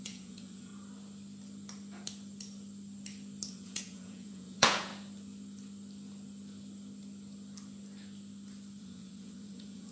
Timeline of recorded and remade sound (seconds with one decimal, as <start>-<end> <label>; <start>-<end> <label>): 0.0-0.7 remade; 0.7-3.5 recorded; 3.5-4.9 remade; 4.9-8.8 recorded; 8.8-9.9 remade